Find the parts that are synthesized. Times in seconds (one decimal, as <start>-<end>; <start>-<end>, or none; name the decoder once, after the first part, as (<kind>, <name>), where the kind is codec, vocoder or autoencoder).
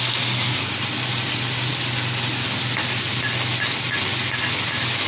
none